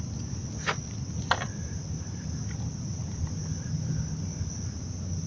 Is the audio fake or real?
real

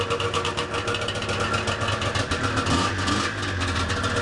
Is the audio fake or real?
real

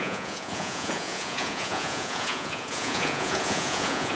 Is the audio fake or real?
fake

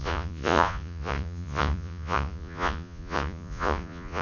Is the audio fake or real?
fake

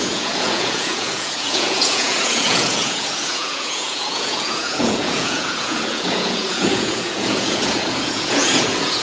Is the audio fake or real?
fake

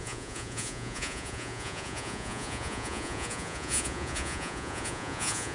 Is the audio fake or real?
fake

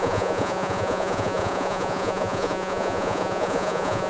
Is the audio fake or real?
fake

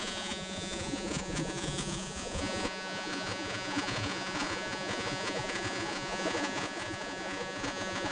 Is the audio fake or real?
fake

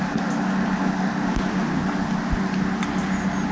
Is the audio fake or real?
real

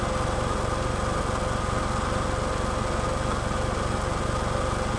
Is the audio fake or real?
real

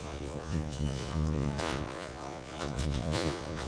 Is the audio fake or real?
fake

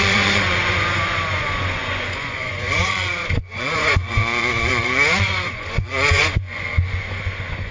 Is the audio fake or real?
fake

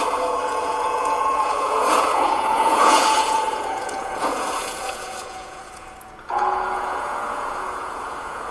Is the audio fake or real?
fake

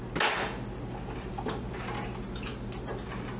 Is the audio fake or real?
real